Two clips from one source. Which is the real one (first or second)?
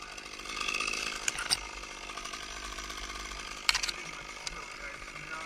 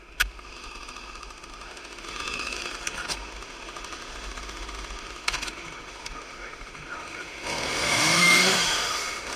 first